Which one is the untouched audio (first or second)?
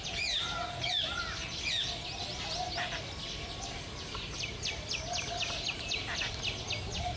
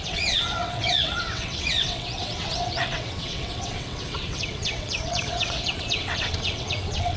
first